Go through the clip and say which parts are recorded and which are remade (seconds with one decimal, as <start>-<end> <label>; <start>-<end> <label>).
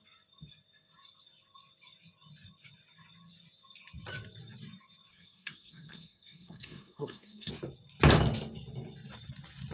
0.0-5.1 recorded; 5.1-7.5 remade; 7.5-9.7 recorded